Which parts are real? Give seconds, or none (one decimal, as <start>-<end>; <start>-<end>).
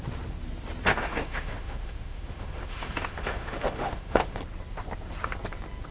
0.0-0.9; 4.4-5.9